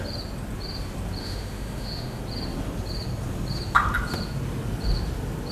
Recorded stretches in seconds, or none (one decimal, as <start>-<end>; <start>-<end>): 0.0-1.2; 2.2-5.5